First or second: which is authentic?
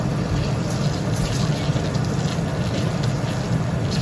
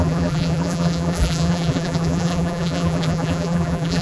first